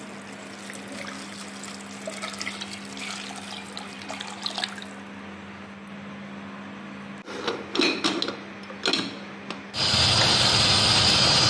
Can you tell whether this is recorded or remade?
recorded